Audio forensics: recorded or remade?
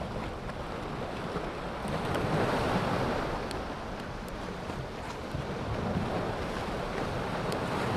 recorded